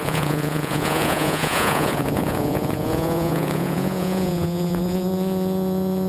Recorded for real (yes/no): no